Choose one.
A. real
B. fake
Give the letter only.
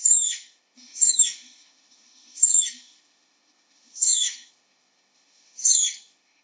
B